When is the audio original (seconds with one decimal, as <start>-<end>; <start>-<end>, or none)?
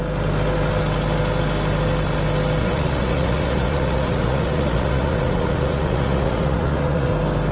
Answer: 0.0-2.6; 7.1-7.5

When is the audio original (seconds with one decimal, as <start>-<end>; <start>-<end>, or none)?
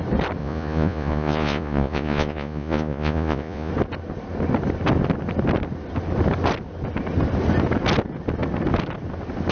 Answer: 0.0-0.4; 3.7-9.5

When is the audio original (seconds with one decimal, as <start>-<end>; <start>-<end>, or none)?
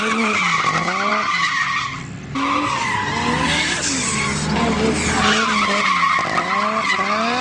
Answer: 0.0-7.4